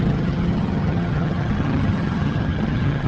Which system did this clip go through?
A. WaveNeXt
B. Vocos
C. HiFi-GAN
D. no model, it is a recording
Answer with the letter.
C